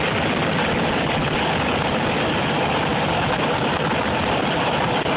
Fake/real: real